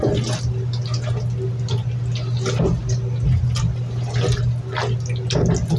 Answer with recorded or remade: recorded